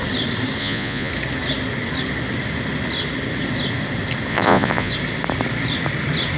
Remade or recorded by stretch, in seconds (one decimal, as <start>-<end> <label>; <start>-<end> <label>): 0.0-0.6 recorded; 0.6-1.1 remade; 1.1-4.3 recorded; 4.3-4.9 remade; 4.9-6.4 recorded